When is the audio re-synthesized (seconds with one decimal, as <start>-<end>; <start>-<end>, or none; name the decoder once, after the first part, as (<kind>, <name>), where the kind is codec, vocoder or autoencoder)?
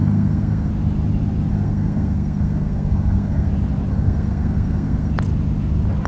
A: 0.0-0.7 (codec, SNAC); 1.5-3.5; 3.9-5.1